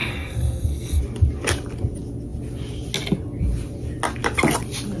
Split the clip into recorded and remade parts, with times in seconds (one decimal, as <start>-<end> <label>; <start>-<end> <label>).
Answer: 0.0-1.0 remade; 1.0-5.0 recorded